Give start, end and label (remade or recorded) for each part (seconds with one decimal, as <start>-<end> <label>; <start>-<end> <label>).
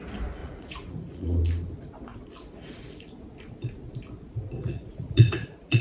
0.0-0.4 recorded; 0.4-1.4 remade; 1.4-4.6 recorded; 4.6-5.8 remade